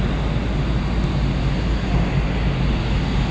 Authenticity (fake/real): real